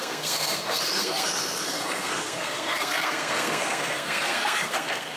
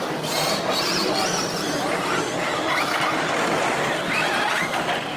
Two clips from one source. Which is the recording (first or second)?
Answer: second